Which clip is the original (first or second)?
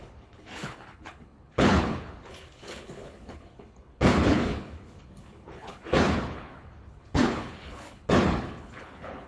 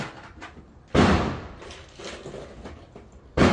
second